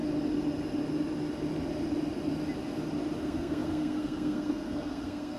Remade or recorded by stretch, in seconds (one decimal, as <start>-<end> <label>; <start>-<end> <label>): 0.0-3.2 recorded; 3.2-5.4 remade